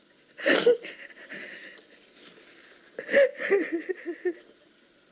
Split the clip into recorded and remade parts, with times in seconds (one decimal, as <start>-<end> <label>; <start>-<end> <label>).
0.0-5.1 recorded